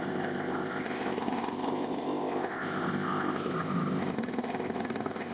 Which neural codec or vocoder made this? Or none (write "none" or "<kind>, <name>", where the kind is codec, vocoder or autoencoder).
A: codec, ZipCodec